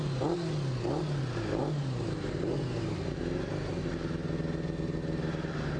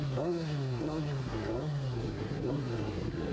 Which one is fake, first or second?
second